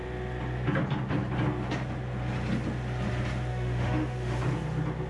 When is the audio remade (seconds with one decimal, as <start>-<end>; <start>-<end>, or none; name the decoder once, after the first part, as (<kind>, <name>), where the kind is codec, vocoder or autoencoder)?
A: 3.5-4.4 (autoencoder, DAC-VAE)